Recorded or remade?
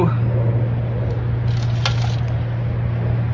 recorded